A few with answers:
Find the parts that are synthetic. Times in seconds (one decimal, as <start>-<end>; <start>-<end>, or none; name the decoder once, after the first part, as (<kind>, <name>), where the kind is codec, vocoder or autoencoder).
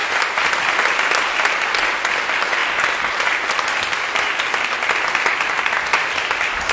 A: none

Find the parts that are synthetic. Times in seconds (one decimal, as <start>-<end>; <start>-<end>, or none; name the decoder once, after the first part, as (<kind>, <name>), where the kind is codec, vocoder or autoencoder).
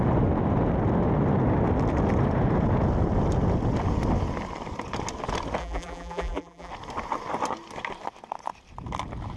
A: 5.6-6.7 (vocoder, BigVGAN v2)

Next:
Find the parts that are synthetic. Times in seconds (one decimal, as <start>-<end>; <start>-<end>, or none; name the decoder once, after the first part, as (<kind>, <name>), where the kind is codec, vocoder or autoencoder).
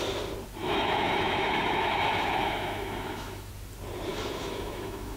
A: 0.6-3.5 (autoencoder, DAC-VAE); 4.1-5.2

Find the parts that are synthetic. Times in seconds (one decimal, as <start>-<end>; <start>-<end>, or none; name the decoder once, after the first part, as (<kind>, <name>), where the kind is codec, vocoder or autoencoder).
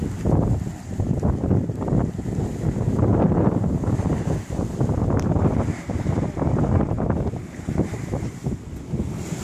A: none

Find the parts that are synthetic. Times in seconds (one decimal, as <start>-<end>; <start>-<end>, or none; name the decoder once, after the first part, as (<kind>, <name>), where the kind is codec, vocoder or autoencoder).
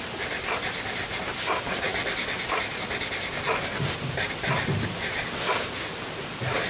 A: none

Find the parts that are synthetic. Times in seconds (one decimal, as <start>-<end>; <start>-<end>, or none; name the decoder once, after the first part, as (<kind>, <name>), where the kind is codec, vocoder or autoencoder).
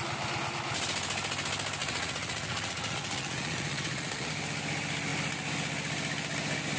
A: 1.8-4.3 (vocoder, Vocos)